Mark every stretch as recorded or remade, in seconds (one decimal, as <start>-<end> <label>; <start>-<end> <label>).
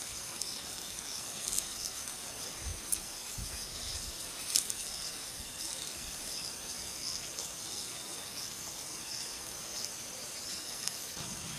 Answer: 0.0-9.9 remade; 9.9-10.5 recorded; 10.5-11.6 remade